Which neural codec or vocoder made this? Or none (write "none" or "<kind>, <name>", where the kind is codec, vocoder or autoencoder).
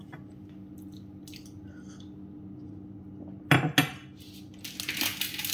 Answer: none